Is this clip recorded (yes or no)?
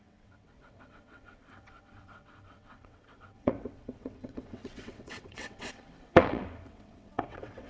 no